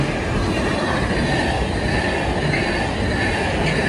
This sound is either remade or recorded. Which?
recorded